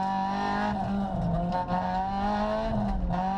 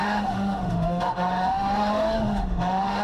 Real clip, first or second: first